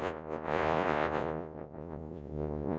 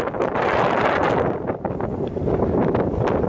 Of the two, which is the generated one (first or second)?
first